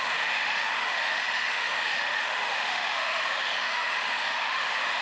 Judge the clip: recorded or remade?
remade